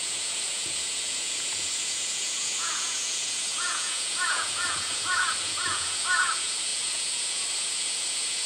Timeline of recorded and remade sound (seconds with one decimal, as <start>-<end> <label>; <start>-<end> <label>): 0.0-8.5 remade